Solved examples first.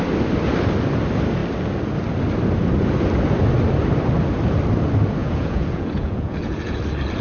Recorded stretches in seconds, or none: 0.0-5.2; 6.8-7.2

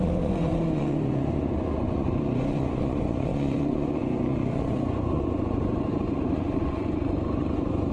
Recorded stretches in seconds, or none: none

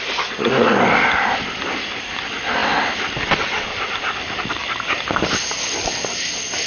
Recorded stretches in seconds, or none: 0.0-6.7

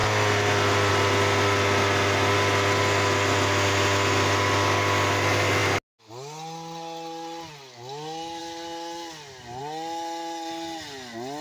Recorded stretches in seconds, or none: 0.0-11.4